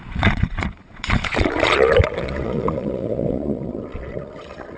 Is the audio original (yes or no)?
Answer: no